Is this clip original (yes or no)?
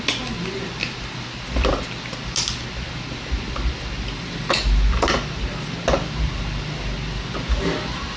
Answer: yes